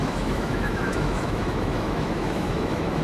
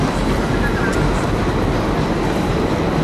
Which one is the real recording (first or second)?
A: second